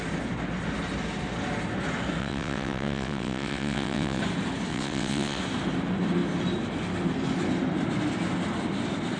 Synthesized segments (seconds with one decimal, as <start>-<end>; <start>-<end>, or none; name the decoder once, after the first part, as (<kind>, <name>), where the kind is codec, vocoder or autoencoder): 2.2-4.2 (vocoder, WaveNeXt); 4.7-5.4